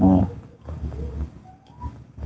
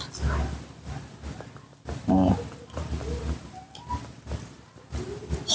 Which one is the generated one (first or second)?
first